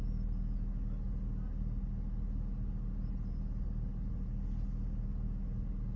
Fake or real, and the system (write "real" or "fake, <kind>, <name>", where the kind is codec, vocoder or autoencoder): real